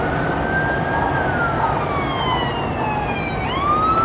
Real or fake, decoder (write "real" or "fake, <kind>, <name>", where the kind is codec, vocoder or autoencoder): real